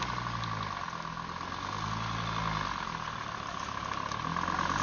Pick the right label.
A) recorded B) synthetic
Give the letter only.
A